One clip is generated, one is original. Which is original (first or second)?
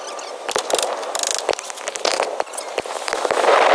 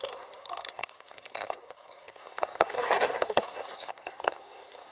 first